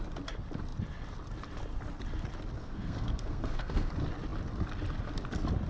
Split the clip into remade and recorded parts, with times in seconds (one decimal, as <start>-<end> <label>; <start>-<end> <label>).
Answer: 0.0-2.6 recorded; 2.6-3.9 remade; 3.9-5.7 recorded